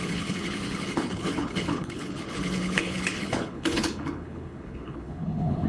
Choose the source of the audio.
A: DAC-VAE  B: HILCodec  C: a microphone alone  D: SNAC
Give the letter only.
B